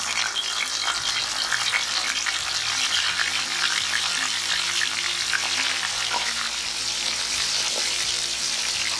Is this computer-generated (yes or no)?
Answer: no